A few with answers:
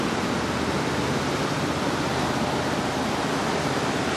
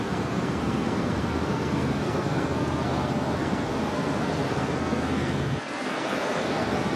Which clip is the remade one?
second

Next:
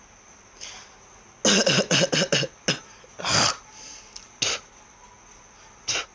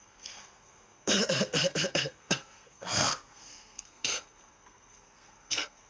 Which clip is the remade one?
second